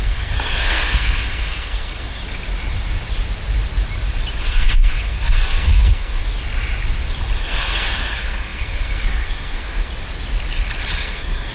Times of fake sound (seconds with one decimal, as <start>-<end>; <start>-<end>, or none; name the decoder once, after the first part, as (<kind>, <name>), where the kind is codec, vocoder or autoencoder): 0.0-2.2 (codec, SNAC); 4.4-6.2; 7.4-9.9; 11.0-11.5